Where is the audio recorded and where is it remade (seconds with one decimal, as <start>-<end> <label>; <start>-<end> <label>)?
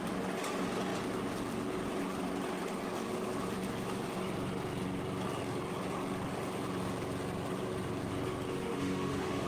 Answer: 0.0-8.5 recorded; 8.5-9.5 remade